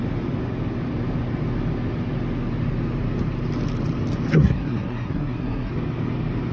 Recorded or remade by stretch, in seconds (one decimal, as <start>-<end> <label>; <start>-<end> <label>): 0.0-4.3 recorded; 4.3-5.7 remade; 5.7-6.5 recorded